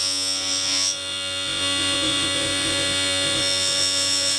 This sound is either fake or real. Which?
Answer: fake